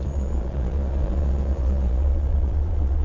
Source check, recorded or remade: remade